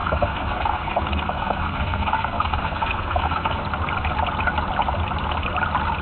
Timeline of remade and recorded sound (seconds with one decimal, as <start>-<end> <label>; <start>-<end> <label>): 0.0-3.6 remade; 3.6-6.0 recorded